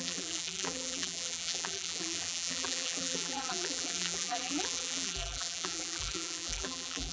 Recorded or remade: remade